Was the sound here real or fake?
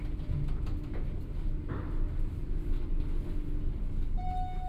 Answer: real